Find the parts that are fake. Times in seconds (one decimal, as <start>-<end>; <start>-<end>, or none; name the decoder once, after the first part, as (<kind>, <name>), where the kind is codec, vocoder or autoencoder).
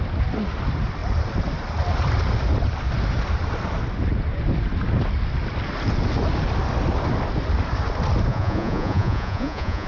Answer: 8.3-9.9 (vocoder, Vocos)